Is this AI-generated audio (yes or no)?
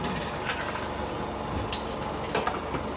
no